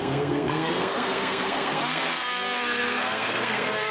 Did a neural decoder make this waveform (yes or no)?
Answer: yes